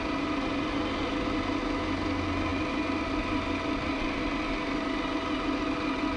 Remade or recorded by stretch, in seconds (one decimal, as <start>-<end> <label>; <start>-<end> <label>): 0.0-6.2 recorded